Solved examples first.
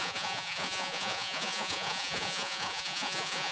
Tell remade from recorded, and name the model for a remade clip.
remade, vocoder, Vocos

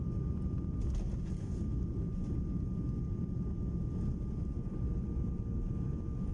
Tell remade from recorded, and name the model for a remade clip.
recorded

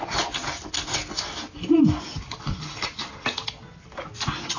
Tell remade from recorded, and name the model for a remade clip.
recorded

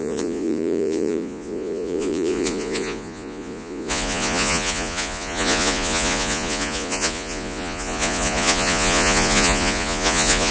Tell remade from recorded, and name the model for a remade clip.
remade, vocoder, Vocos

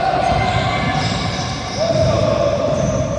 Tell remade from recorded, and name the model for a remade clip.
recorded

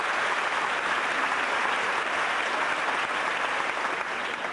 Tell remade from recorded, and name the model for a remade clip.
remade, vocoder, BigVGAN v2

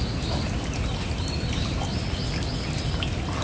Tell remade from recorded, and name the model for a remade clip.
recorded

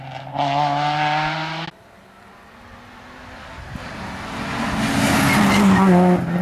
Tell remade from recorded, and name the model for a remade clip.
recorded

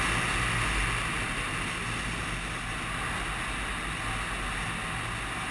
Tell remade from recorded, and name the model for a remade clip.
recorded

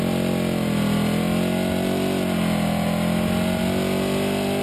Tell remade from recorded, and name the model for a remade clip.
recorded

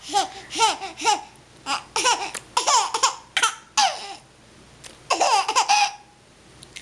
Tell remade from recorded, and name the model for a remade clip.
recorded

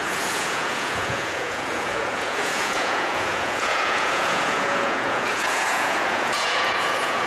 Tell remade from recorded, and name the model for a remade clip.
remade, vocoder, Vocos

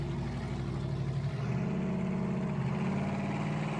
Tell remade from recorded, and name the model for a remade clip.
recorded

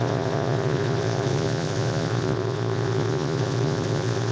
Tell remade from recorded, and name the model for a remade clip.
remade, vocoder, Vocos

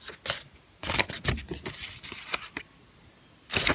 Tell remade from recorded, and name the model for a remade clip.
recorded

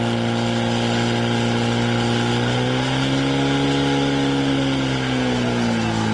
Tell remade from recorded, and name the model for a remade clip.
recorded